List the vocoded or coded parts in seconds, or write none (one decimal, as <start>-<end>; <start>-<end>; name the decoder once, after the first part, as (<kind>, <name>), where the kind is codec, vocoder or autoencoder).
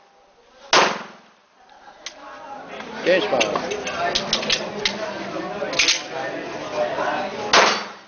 none